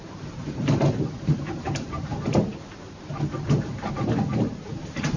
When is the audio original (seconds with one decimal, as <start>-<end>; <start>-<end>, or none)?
2.5-3.4